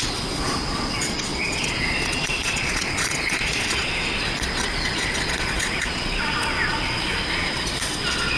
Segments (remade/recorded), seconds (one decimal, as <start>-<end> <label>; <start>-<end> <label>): 0.0-8.4 remade